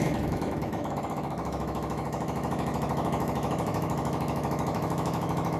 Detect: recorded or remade remade